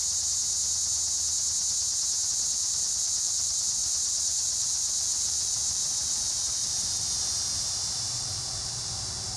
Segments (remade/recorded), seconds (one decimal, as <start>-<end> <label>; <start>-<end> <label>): 0.0-2.3 recorded; 2.3-9.4 remade